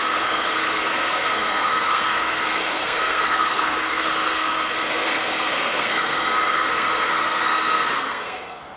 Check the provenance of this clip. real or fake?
fake